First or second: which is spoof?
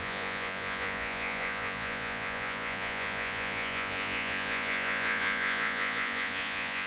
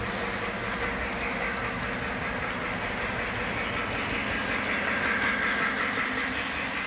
first